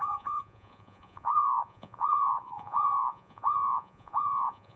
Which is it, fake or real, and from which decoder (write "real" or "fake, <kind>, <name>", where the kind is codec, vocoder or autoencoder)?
fake, vocoder, Vocos